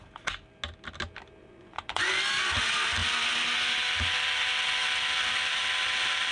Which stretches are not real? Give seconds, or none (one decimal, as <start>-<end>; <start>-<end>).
1.4-2.2